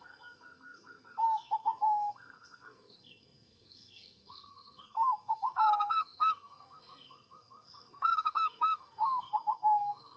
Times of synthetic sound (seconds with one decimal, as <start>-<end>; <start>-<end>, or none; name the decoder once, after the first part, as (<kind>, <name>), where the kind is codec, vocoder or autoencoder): 0.0-10.2 (codec, SNAC)